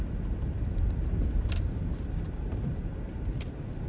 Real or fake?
real